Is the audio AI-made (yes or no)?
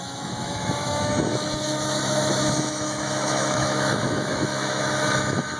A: yes